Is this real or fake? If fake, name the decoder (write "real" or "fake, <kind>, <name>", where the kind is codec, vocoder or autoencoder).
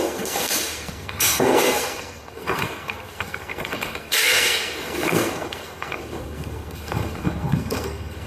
fake, codec, SNAC